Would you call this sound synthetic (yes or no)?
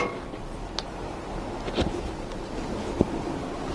no